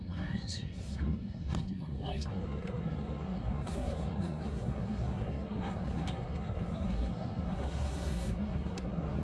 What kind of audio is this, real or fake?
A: fake